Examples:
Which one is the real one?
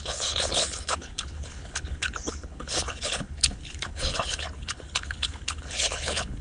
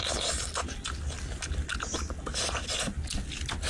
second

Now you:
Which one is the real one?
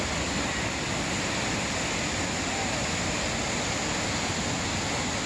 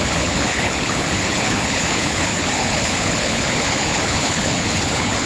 first